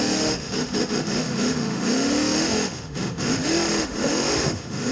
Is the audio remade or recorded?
remade